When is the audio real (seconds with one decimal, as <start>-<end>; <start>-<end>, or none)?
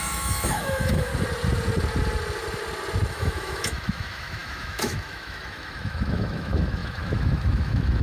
1.1-3.1